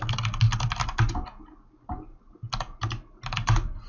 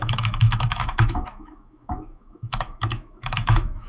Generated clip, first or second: second